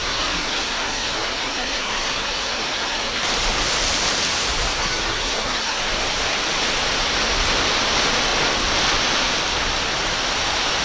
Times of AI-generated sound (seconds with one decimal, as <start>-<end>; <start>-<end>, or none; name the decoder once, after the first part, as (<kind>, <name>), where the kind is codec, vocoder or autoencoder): 0.0-3.2 (codec, SNAC); 4.8-5.8